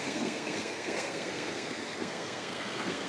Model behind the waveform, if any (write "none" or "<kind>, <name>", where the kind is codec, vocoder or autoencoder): codec, SNAC